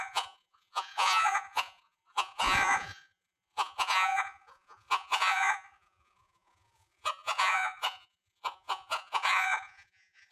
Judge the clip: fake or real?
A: fake